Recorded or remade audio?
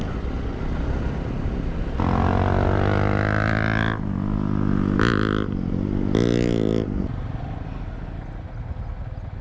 recorded